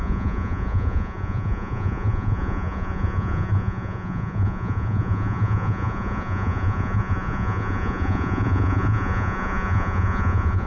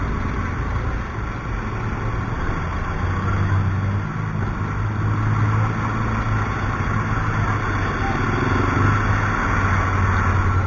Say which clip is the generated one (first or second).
first